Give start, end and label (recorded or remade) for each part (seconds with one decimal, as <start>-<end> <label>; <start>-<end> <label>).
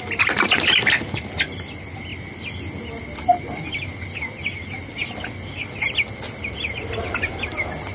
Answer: 0.0-7.9 recorded